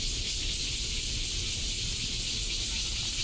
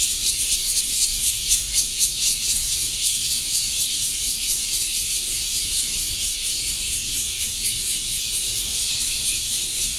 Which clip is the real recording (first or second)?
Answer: first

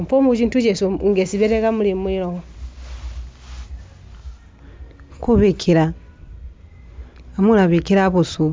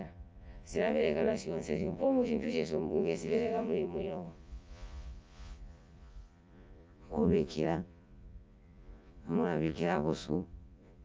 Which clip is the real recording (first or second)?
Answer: first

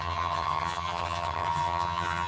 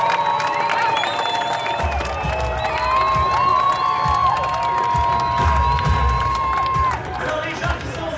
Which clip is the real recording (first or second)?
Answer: second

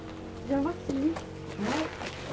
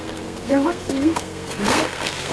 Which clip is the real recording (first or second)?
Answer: first